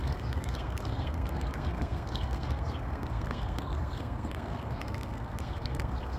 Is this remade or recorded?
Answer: remade